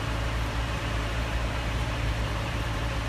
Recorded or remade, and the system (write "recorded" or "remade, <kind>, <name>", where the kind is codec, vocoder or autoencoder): remade, vocoder, BigVGAN v2